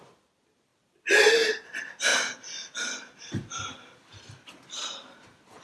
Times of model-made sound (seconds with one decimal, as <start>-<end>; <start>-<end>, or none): none